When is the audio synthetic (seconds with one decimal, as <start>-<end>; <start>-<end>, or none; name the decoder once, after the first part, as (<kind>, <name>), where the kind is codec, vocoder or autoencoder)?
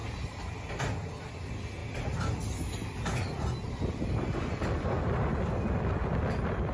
none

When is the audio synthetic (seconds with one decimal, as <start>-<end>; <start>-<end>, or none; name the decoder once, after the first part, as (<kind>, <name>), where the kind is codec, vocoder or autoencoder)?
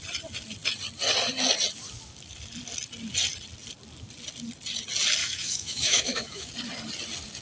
5.2-6.5 (autoencoder, DAC-VAE)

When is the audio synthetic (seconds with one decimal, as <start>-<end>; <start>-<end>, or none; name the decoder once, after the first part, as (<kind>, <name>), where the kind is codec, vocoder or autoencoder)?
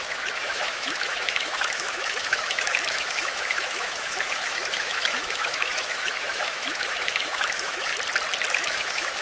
0.0-7.9 (autoencoder, DAC-VAE); 8.5-9.2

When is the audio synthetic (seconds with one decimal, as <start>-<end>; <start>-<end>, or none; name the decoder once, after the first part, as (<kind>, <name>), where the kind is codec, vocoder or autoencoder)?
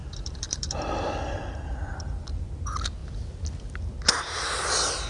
0.0-2.4 (vocoder, BigVGAN v2)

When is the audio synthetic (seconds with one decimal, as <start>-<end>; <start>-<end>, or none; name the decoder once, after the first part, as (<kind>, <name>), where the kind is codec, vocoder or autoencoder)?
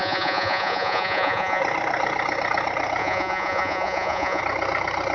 0.0-1.6 (vocoder, Vocos); 3.0-4.4